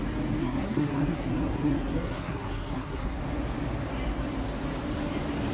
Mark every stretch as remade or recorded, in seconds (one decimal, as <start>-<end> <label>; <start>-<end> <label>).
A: 0.0-0.4 recorded; 0.4-3.2 remade; 3.2-5.5 recorded